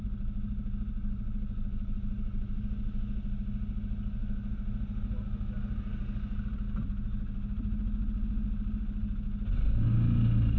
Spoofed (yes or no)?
no